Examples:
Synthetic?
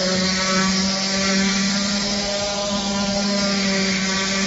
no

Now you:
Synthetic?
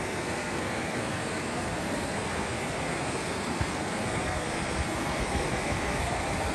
yes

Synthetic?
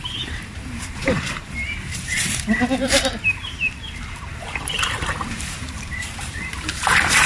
yes